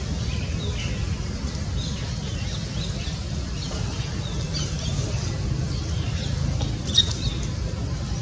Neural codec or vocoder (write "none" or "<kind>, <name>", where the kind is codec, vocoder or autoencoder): none